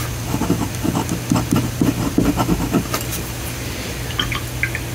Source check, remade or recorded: recorded